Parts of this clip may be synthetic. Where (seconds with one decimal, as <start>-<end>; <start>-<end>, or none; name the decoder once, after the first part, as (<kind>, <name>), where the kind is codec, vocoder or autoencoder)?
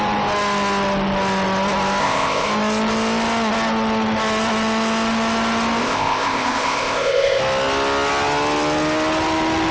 2.0-2.5 (codec, ZipCodec); 5.8-7.4